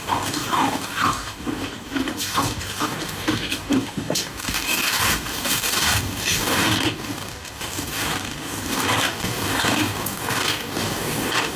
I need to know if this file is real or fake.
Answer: fake